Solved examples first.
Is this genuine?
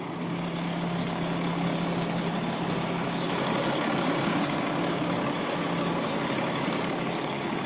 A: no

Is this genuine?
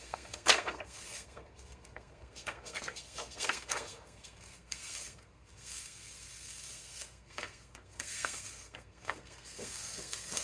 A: no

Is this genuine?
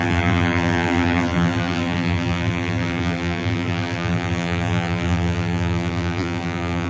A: no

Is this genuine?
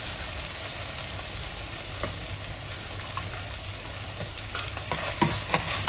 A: yes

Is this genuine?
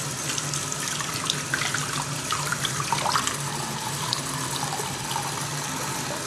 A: yes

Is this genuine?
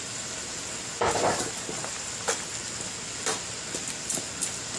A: yes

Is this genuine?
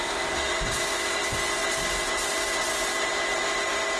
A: yes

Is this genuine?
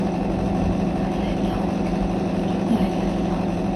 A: yes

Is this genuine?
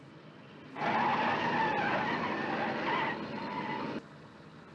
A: yes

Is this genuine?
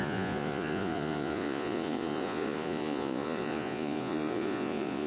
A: no